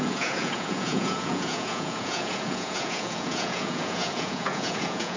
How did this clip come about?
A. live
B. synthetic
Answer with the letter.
B